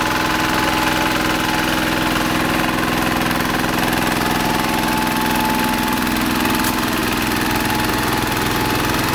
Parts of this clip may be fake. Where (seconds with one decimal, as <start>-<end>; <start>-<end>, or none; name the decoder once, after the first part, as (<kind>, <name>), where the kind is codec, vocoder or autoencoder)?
none